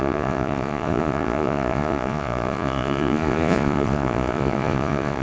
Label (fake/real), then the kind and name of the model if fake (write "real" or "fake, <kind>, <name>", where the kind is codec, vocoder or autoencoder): fake, vocoder, Vocos